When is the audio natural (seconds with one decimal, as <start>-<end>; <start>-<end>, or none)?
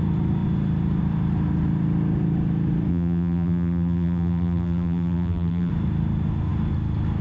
0.0-2.9; 5.7-7.2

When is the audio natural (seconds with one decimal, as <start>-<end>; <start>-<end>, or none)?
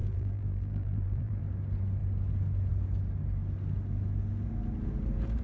1.4-5.4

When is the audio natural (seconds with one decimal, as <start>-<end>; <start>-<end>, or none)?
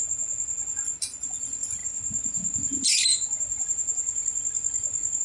0.0-5.2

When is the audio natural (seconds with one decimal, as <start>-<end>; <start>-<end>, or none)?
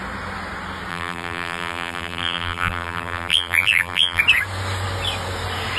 0.0-0.9; 4.2-5.8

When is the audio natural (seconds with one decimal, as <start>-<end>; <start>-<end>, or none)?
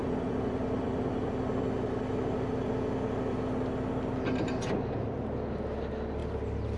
1.4-6.8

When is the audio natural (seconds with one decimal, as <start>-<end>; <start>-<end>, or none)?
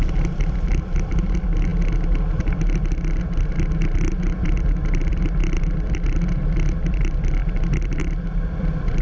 none